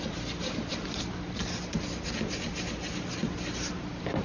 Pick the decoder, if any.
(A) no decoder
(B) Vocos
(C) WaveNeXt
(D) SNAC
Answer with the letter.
A